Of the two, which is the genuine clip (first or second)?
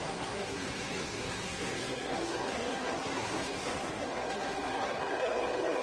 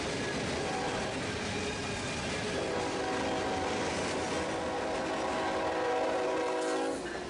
second